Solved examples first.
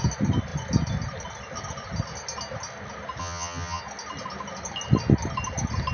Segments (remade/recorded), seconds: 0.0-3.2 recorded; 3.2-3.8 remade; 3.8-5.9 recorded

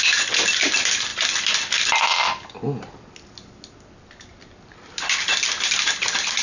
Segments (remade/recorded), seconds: 0.0-6.4 recorded

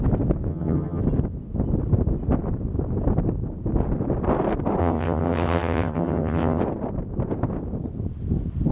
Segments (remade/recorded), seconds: 0.0-0.5 recorded; 0.5-1.0 remade; 1.0-4.8 recorded; 4.8-6.6 remade; 6.6-8.7 recorded

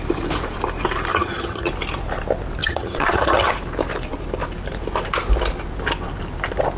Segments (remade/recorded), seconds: 0.0-1.1 recorded; 1.1-1.7 remade; 1.7-2.6 recorded; 2.6-3.5 remade; 3.5-6.8 recorded

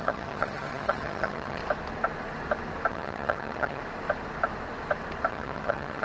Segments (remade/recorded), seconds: 0.0-1.6 remade; 1.6-2.9 recorded; 2.9-3.8 remade; 3.8-5.3 recorded; 5.3-6.0 remade